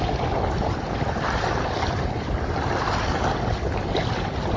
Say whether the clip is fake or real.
real